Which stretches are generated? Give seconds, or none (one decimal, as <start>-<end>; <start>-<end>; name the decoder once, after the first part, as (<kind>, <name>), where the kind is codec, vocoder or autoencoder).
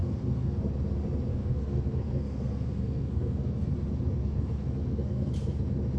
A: 0.0-0.6 (codec, SNAC); 1.3-3.7; 4.2-5.3